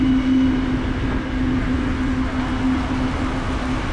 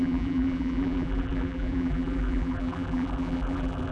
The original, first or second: first